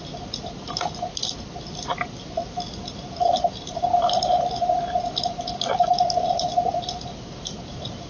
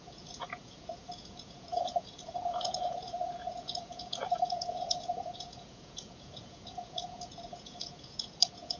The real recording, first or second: first